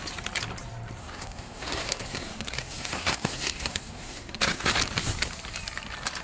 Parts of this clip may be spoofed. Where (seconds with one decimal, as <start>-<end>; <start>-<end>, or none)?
1.0-4.7